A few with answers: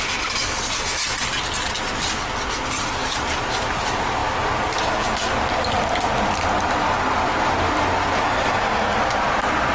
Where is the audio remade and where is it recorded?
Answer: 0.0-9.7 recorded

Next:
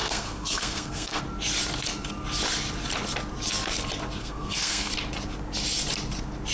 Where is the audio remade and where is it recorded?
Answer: 0.0-1.2 remade; 1.2-4.2 recorded; 4.2-4.9 remade; 4.9-6.5 recorded

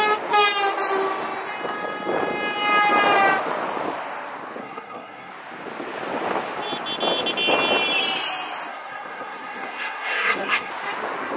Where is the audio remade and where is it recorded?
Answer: 0.0-4.6 recorded; 4.6-5.3 remade; 5.3-8.7 recorded; 8.7-10.7 remade; 10.7-11.4 recorded